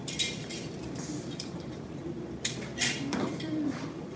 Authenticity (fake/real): fake